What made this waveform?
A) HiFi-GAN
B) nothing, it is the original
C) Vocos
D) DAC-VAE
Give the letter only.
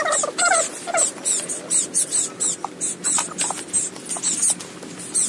B